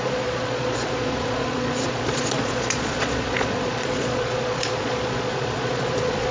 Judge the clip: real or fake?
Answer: fake